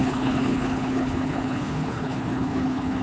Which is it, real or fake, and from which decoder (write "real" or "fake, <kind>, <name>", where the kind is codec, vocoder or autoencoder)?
fake, codec, HILCodec